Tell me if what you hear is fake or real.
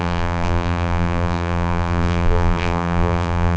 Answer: fake